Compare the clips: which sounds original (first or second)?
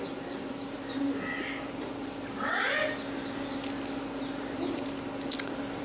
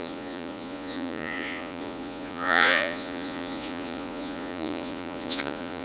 first